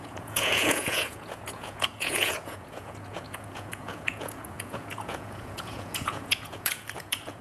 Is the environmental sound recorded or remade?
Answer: remade